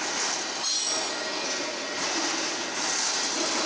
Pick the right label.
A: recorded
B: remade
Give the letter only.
A